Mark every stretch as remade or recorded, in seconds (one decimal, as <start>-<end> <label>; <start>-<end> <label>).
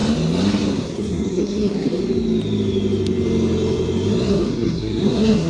0.0-0.7 recorded; 0.7-2.0 remade; 2.0-4.3 recorded; 4.3-5.5 remade